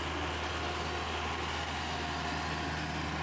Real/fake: real